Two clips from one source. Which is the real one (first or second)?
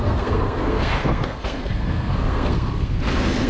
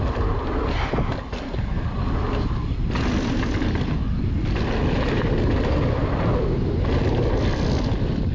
second